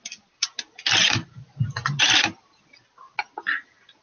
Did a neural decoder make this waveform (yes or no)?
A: no